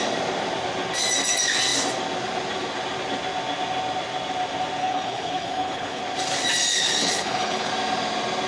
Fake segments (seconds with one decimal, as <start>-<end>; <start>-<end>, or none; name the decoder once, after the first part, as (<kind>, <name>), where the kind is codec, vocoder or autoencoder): 4.8-6.0 (codec, HILCodec); 6.7-7.7